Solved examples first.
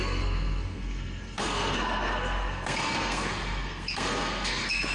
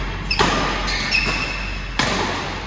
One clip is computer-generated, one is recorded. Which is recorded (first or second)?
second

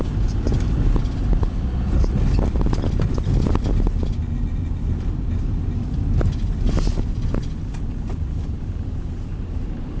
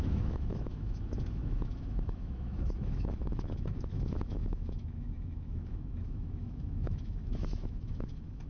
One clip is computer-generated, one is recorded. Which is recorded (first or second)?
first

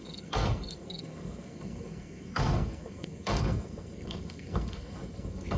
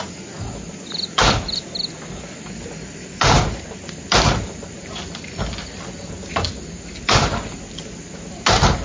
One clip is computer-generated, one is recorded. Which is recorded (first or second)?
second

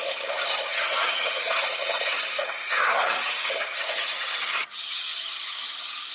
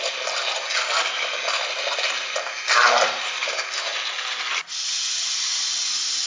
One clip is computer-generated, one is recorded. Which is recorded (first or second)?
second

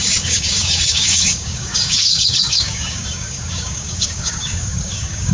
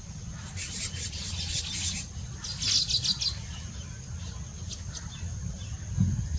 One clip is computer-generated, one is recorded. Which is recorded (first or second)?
second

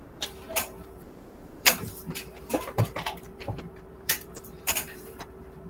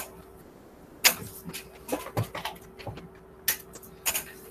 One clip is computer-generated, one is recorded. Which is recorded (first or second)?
second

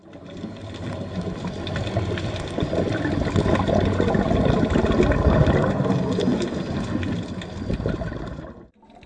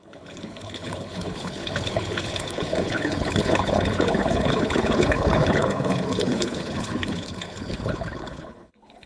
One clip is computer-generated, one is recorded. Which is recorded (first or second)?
first